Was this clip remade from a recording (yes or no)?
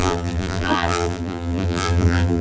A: yes